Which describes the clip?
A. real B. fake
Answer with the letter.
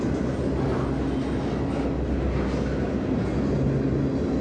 A